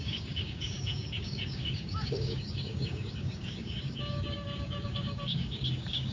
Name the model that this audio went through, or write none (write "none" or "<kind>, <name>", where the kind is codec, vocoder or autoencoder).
codec, DAC